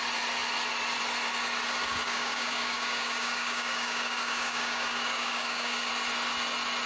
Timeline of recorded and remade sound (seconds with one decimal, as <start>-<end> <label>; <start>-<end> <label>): 0.0-1.8 recorded; 1.8-5.9 remade; 5.9-6.9 recorded